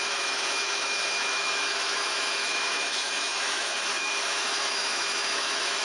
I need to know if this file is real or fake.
fake